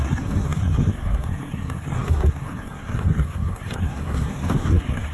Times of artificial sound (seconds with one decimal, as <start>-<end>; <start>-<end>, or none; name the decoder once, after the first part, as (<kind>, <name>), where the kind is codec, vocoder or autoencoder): 0.0-5.1 (codec, SNAC)